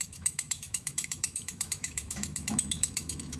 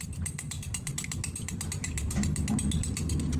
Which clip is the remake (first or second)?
first